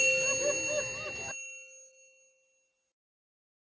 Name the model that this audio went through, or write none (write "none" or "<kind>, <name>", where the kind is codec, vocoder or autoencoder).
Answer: none